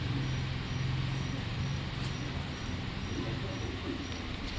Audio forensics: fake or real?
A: real